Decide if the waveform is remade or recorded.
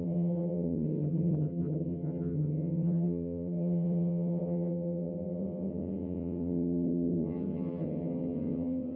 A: remade